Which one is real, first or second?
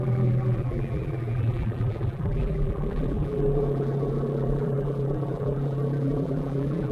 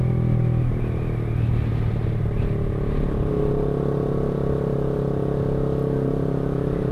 second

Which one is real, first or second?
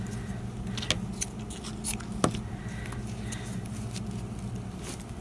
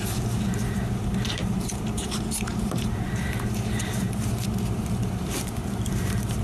first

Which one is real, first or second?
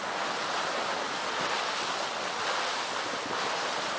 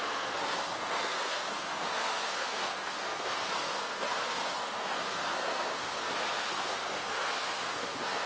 first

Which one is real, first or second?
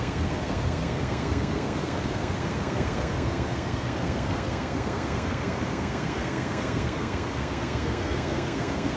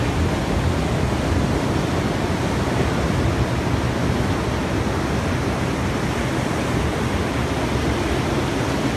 second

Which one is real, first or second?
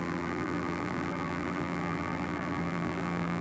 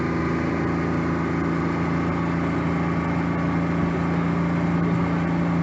second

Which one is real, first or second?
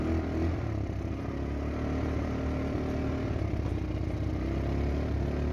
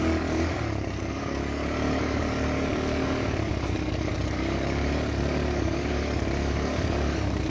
first